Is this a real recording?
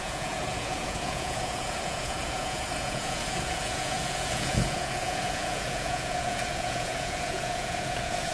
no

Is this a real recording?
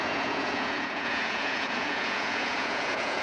no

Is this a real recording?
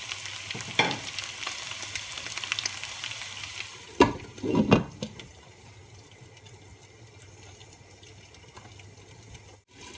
yes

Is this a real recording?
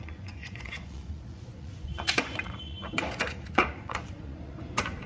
no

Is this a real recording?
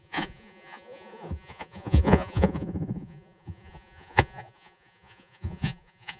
no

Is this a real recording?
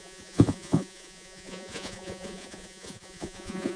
no